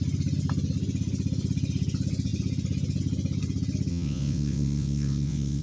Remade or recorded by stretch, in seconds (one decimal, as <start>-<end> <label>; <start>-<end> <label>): 0.0-3.9 recorded; 3.9-5.6 remade